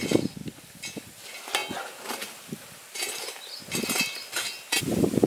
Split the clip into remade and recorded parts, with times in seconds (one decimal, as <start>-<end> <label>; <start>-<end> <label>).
0.0-5.3 recorded